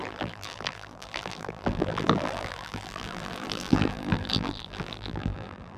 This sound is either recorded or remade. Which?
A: remade